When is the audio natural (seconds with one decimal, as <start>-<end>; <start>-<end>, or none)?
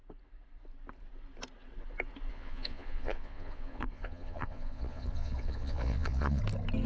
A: 0.0-2.3; 6.4-6.9